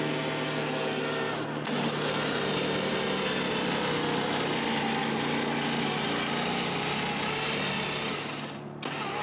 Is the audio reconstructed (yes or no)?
no